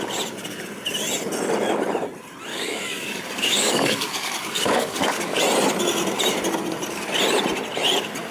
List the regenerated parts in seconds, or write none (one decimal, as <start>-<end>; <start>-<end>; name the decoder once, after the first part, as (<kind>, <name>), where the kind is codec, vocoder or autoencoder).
2.5-5.4 (codec, DAC)